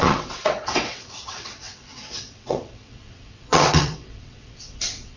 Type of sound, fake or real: fake